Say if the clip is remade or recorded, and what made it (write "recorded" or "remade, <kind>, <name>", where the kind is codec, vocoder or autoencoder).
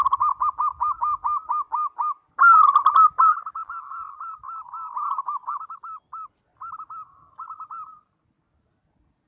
recorded